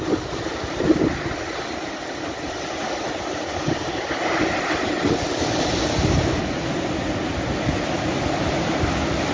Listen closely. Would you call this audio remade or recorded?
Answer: recorded